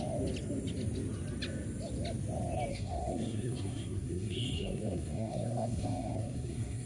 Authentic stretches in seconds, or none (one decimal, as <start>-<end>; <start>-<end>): 0.0-2.7